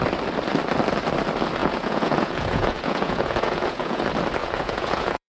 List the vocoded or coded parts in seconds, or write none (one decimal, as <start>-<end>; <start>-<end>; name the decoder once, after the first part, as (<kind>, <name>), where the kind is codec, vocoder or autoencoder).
1.6-4.0 (vocoder, Vocos); 4.4-5.3